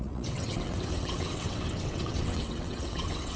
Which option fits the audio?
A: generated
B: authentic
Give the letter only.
A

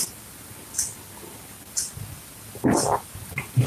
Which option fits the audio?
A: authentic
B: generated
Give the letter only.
A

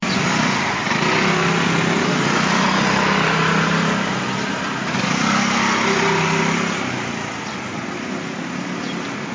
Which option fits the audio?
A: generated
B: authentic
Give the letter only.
B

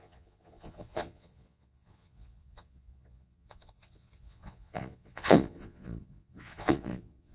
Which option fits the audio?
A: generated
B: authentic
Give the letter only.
A